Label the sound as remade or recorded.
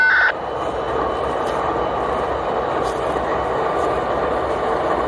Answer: recorded